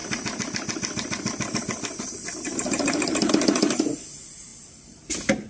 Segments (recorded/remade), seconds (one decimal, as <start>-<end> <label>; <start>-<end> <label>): 0.0-5.5 recorded